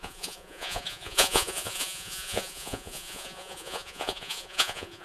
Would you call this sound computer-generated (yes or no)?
yes